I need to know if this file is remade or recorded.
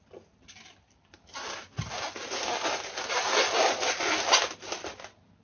recorded